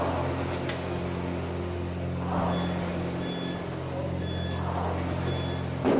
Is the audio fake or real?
real